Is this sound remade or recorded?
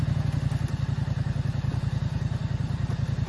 recorded